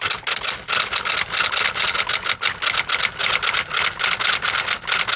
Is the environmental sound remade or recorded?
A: recorded